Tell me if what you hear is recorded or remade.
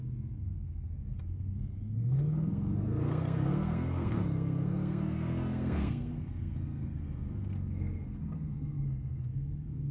remade